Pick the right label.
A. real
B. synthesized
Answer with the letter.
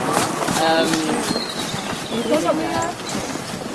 A